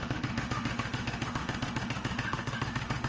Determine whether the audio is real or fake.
fake